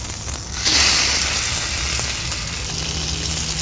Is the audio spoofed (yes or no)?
no